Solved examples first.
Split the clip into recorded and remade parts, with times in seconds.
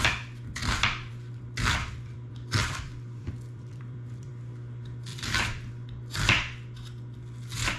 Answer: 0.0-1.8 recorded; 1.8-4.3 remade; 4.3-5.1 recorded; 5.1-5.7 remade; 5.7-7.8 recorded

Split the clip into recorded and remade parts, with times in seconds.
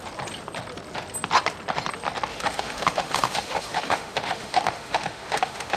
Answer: 0.0-2.3 recorded; 2.3-5.8 remade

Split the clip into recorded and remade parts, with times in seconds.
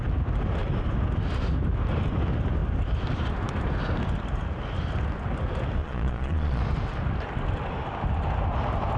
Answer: 0.0-5.8 recorded; 5.8-6.6 remade; 6.6-9.0 recorded